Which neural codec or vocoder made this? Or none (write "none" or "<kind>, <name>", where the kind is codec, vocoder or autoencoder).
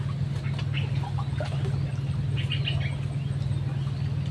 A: none